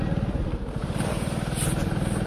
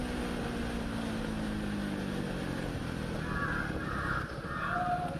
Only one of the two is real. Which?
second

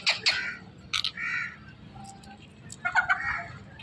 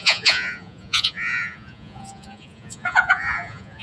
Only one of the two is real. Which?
first